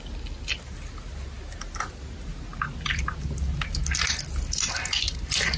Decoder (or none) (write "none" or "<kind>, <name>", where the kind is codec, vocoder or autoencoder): none